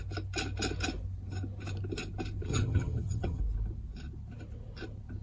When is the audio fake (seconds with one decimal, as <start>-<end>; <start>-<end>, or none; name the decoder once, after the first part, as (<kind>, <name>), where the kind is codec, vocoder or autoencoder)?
2.5-3.4 (vocoder, HiFi-GAN)